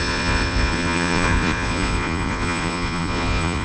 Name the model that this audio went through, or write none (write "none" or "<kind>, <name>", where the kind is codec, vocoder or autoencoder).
vocoder, Vocos